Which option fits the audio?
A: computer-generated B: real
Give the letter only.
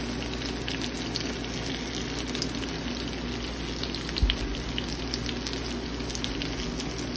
B